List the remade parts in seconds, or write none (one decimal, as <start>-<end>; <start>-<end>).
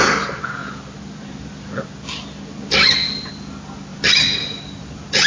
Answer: none